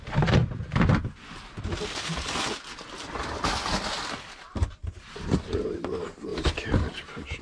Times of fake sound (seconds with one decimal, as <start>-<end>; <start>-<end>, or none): 0.0-6.3